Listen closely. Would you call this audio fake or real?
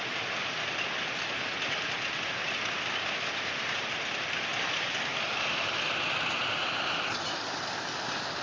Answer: real